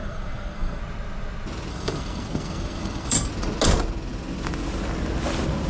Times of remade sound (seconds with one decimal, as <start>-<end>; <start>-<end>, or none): 0.0-0.8; 1.7-3.3